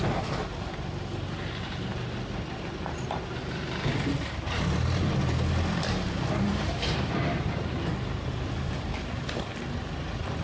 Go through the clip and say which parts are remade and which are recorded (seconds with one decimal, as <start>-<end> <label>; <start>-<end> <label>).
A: 0.0-6.5 recorded; 6.5-7.9 remade; 7.9-10.4 recorded